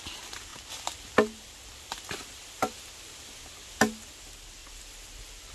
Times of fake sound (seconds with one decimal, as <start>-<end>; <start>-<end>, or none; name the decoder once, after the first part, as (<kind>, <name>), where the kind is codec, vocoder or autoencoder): 0.5-3.4 (vocoder, BigVGAN v2); 4.6-5.5